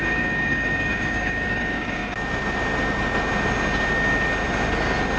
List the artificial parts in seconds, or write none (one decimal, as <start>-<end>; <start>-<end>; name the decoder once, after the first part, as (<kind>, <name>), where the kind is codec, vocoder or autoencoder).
0.0-2.0 (codec, DAC)

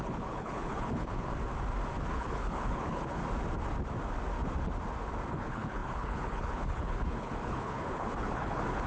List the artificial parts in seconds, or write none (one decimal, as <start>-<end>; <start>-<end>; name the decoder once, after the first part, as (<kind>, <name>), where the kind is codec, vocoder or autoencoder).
0.0-1.3 (codec, HILCodec); 2.1-3.2; 5.3-8.9

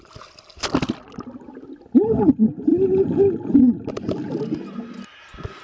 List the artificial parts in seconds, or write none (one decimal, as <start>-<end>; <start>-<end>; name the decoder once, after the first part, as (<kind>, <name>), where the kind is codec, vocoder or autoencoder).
none

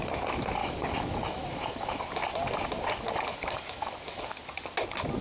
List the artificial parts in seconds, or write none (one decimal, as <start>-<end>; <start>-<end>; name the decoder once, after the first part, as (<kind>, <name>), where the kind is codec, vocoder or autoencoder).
0.6-2.0 (autoencoder, DAC-VAE); 3.3-4.4

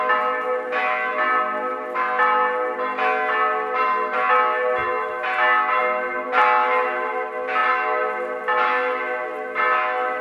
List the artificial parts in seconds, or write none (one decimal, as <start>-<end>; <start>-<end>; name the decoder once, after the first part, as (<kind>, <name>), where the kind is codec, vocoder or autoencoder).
none

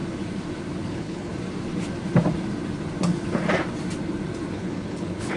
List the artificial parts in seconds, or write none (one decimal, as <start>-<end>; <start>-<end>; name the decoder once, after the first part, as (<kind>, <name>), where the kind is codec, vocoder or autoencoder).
0.9-1.3 (codec, HILCodec); 4.5-5.4